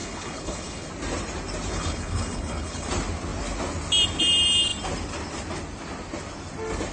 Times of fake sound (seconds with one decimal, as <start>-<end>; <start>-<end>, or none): 0.0-0.9; 1.7-2.9